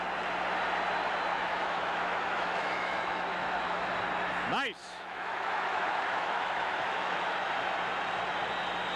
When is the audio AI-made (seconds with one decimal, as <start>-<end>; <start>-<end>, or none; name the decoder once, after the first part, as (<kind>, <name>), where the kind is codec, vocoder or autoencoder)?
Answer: 1.3-3.9 (autoencoder, DAC-VAE); 4.8-7.5